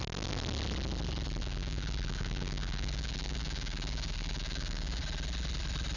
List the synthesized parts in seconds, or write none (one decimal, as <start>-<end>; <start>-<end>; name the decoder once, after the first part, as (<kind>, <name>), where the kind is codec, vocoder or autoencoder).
1.4-5.0 (codec, DAC)